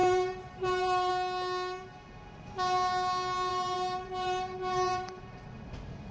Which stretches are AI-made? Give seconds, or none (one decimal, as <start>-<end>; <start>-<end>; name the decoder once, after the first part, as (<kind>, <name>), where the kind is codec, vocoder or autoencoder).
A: 0.0-1.1 (vocoder, BigVGAN v2); 3.5-5.5